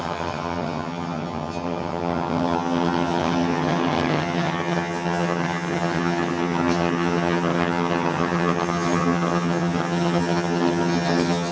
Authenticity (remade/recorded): remade